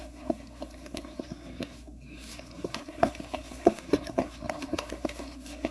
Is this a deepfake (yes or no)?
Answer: yes